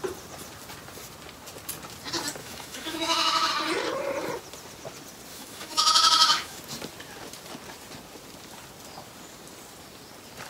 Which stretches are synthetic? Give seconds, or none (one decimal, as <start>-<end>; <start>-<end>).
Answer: 2.4-3.5; 5.3-6.6

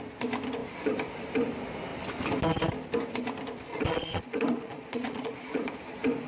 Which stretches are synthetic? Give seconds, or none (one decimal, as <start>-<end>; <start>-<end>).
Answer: 3.7-5.7

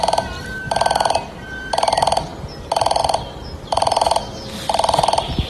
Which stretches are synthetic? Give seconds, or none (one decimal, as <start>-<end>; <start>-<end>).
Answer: none

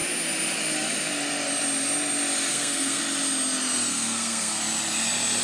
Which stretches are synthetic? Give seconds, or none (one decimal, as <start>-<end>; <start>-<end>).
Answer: 2.5-3.0; 3.9-4.6